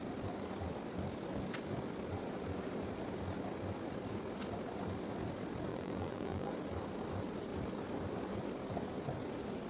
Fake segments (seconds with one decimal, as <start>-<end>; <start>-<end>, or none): 5.7-6.5